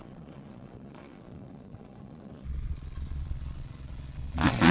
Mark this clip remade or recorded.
remade